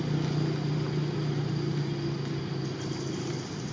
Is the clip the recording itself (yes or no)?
yes